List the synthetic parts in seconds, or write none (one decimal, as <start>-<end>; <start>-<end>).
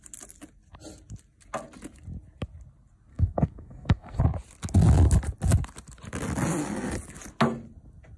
3.1-4.2